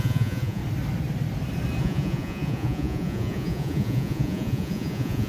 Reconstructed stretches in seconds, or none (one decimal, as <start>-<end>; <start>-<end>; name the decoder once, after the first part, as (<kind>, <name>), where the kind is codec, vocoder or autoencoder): 0.0-0.6 (vocoder, Vocos); 1.8-5.3